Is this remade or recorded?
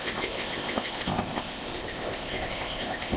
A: remade